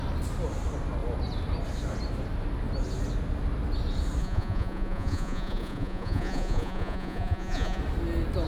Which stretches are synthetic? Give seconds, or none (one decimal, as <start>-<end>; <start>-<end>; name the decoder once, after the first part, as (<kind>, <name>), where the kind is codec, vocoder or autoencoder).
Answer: 4.2-7.8 (vocoder, Vocos)